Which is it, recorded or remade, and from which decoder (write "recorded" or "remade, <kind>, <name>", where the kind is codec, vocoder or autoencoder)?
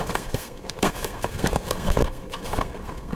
remade, codec, SNAC